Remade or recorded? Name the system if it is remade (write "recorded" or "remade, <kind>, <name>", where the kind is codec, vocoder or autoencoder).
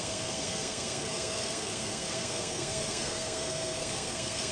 remade, codec, SNAC